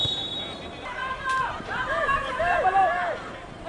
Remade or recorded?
remade